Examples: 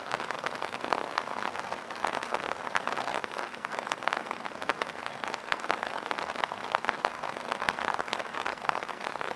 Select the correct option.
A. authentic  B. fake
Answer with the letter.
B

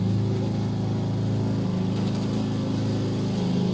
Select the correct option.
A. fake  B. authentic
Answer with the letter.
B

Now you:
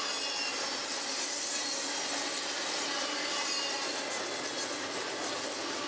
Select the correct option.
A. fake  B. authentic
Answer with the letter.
B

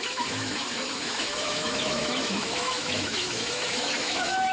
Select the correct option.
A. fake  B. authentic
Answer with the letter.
A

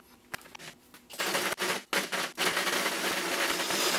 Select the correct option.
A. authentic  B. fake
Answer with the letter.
A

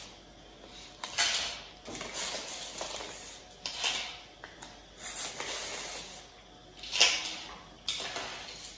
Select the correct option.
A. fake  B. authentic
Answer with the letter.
B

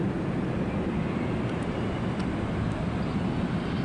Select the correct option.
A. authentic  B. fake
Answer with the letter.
A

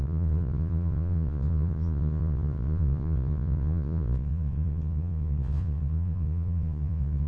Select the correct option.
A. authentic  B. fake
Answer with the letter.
B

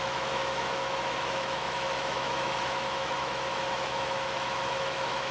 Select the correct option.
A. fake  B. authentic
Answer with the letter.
A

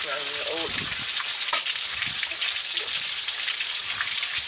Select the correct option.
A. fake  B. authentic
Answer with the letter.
B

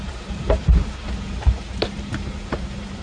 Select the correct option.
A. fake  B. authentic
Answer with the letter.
A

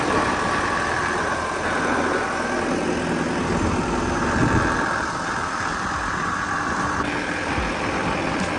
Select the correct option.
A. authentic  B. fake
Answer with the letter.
A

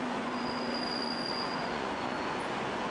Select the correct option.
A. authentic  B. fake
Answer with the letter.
B